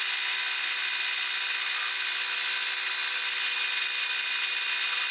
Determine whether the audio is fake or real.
real